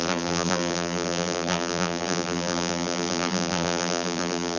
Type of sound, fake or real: fake